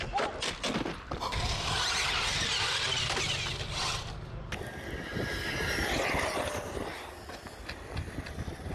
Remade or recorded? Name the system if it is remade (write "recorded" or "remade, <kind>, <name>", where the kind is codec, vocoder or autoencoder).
recorded